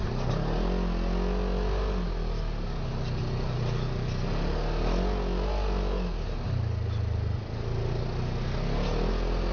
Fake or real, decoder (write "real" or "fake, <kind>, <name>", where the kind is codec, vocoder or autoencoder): real